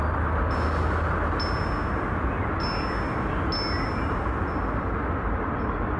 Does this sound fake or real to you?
real